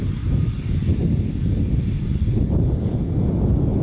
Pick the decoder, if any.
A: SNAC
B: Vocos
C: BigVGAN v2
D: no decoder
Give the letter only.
D